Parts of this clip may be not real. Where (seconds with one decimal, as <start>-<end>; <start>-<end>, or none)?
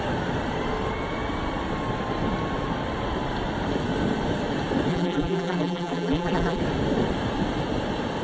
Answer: 4.9-6.6